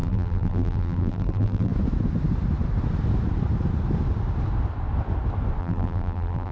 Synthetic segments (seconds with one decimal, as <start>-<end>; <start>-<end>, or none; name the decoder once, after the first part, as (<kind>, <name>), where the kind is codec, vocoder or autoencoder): 0.0-1.7 (vocoder, BigVGAN v2); 5.6-6.5